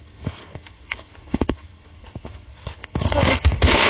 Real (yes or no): no